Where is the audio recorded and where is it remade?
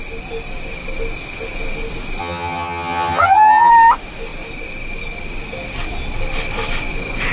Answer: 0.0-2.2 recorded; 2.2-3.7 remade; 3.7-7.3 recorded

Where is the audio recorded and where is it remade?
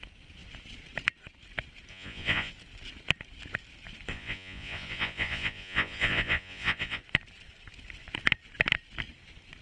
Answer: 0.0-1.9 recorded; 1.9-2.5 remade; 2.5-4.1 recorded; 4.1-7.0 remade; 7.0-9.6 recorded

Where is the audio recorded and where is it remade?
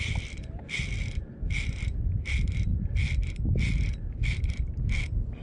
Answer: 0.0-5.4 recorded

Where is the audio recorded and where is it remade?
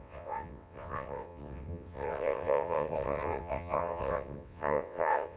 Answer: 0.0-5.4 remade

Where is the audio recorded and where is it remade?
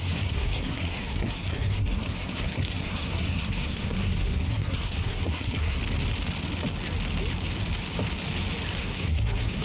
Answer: 0.0-5.8 remade; 5.8-8.8 recorded; 8.8-9.6 remade